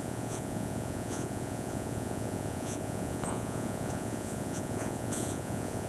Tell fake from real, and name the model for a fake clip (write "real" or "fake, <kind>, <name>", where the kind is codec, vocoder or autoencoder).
fake, vocoder, Vocos